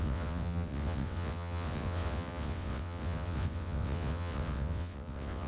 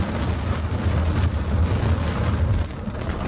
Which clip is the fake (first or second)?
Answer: first